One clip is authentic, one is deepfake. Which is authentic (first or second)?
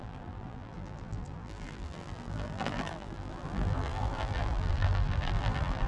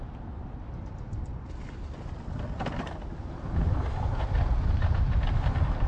second